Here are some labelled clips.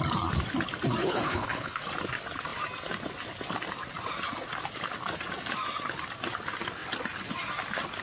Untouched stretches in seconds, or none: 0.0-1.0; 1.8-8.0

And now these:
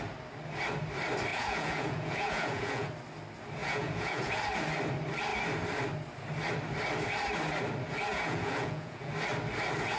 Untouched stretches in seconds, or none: 0.0-1.3; 2.9-3.6; 4.3-8.1; 9.1-10.0

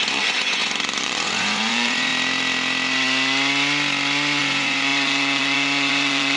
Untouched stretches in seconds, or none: 2.1-4.4